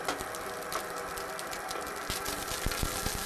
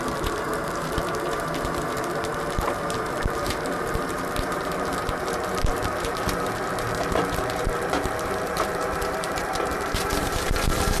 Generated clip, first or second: second